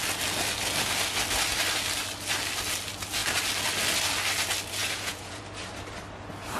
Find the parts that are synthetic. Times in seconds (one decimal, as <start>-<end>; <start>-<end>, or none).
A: 4.8-5.4